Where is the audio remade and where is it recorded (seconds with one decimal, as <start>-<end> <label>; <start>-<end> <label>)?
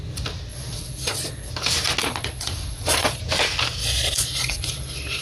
0.0-0.5 recorded; 0.5-1.5 remade; 1.5-2.0 recorded; 2.0-3.2 remade; 3.2-3.8 recorded; 3.8-5.2 remade